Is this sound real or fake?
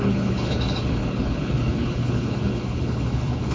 fake